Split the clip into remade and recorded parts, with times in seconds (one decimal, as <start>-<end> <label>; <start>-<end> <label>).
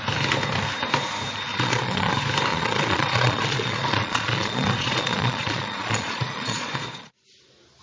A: 0.0-1.5 recorded; 1.5-2.1 remade; 2.1-2.5 recorded; 2.5-7.2 remade; 7.2-7.8 recorded